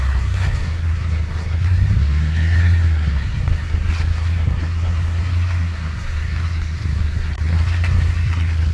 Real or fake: fake